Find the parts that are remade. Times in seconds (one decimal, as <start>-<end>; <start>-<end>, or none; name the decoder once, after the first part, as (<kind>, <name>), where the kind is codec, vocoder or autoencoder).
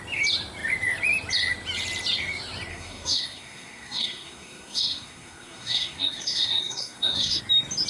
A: 2.7-7.4 (codec, SNAC)